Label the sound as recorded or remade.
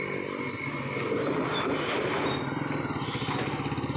recorded